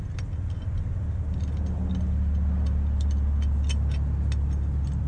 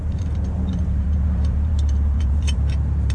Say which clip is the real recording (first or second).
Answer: first